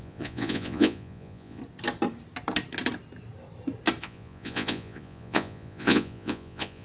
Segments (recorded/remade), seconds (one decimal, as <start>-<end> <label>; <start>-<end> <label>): 0.0-1.6 remade; 1.6-4.0 recorded; 4.0-6.8 remade